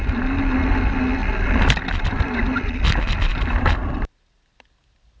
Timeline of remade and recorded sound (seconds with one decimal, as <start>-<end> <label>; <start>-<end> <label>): 0.0-1.2 recorded; 1.2-2.8 remade; 2.8-3.3 recorded; 3.3-3.8 remade; 3.8-5.2 recorded